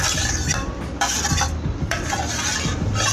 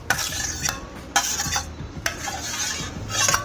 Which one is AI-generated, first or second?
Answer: first